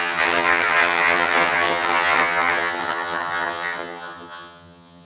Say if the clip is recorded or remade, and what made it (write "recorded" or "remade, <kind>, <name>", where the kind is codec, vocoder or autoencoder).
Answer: remade, vocoder, HiFi-GAN